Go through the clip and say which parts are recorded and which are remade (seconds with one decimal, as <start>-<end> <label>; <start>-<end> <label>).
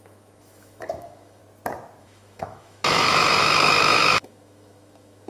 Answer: 0.0-1.4 remade; 1.4-2.0 recorded; 2.0-5.3 remade